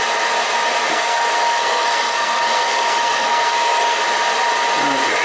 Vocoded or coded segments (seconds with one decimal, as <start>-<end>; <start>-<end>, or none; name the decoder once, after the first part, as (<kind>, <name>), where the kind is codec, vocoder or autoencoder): 0.9-4.0 (codec, SNAC)